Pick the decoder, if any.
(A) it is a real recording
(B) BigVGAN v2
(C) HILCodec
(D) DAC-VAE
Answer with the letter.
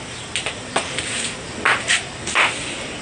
A